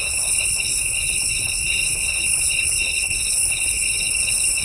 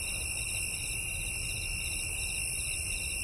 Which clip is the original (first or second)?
second